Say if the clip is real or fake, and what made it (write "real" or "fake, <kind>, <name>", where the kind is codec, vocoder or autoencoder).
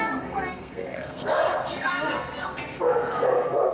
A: fake, codec, SNAC